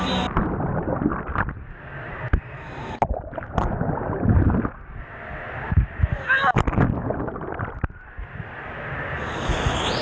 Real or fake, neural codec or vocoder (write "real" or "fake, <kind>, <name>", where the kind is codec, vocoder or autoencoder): real